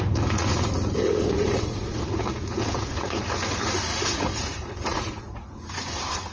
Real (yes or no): no